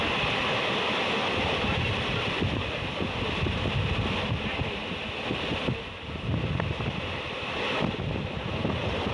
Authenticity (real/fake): real